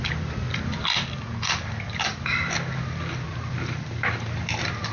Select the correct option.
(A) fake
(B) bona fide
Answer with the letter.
B